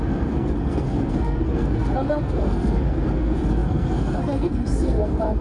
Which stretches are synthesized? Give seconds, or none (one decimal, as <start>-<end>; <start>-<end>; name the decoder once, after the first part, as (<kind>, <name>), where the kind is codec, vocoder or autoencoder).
0.0-5.4 (codec, SNAC)